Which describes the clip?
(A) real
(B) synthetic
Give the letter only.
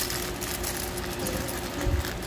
A